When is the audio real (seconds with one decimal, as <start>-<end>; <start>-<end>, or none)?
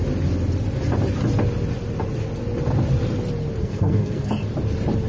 0.0-3.6; 4.3-5.1